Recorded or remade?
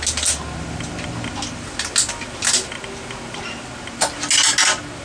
recorded